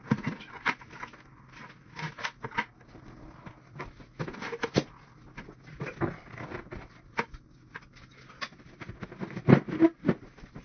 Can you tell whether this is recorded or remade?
recorded